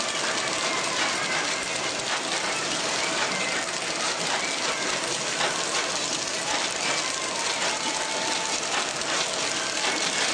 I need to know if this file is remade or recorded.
recorded